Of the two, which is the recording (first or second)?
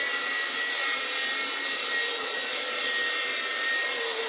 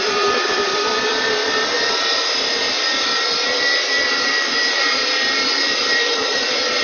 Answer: first